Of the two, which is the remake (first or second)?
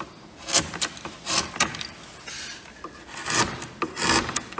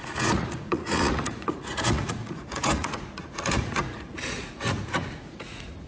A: second